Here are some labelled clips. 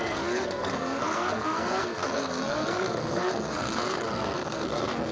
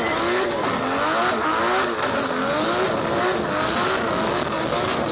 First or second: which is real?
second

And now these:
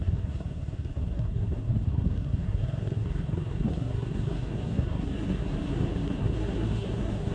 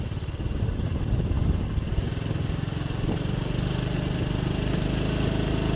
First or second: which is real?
second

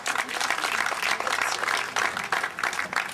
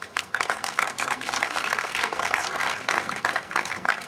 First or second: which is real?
first